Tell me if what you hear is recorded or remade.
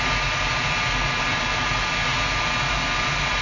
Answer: recorded